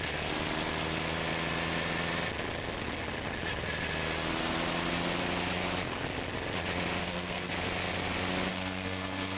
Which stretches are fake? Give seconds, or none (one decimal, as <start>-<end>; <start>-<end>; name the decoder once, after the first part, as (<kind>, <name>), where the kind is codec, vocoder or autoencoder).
7.0-7.5 (codec, SNAC); 8.5-9.4